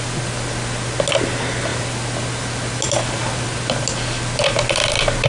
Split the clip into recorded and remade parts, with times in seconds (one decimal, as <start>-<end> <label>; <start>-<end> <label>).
0.0-5.3 recorded